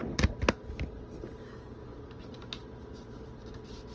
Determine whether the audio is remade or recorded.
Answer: recorded